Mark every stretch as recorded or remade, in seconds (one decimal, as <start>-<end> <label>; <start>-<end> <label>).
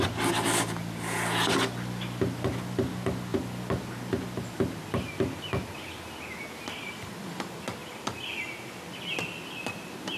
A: 0.0-7.8 recorded; 7.8-8.4 remade; 8.4-10.2 recorded